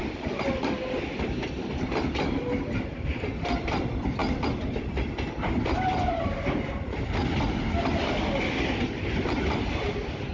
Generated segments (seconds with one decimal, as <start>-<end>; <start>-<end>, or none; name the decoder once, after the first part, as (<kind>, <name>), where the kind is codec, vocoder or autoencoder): none